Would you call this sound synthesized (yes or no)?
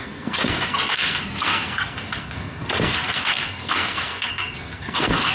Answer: yes